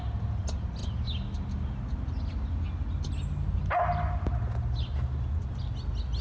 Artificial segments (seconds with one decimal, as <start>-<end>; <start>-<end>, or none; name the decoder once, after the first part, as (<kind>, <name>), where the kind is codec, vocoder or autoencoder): none